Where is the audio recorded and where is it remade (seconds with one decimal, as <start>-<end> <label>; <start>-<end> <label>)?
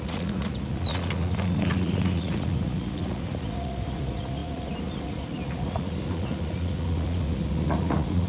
0.0-8.3 remade